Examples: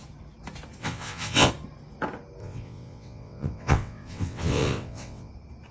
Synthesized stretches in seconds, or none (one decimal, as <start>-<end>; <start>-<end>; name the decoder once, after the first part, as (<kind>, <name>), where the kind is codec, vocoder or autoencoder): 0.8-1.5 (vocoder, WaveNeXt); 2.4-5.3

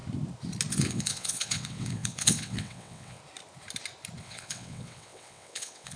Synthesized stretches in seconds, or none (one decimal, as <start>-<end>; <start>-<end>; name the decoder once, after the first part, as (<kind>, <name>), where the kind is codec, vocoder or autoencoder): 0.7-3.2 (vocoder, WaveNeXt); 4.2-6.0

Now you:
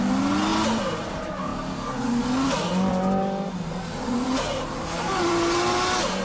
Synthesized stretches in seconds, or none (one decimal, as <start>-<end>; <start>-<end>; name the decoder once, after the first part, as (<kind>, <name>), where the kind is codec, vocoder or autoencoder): none

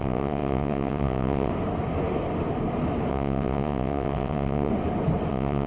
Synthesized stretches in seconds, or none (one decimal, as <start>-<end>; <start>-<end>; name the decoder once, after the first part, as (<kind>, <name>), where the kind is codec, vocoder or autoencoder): 0.0-1.5 (vocoder, WaveNeXt); 3.1-4.7; 5.3-5.7